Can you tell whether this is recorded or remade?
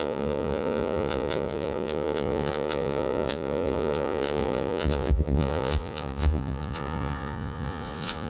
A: remade